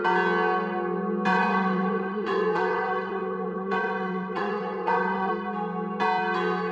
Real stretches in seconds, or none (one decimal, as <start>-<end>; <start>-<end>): 0.0-1.3; 5.3-6.7